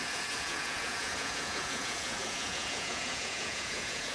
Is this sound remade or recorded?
remade